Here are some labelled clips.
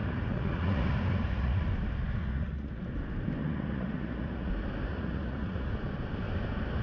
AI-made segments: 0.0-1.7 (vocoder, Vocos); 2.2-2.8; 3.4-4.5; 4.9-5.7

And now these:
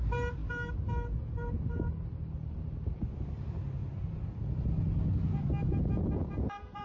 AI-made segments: 5.6-6.8 (vocoder, Vocos)